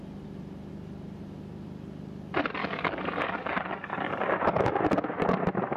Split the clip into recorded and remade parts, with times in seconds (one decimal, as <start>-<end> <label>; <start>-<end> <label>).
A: 0.0-2.6 recorded; 2.6-4.8 remade; 4.8-5.8 recorded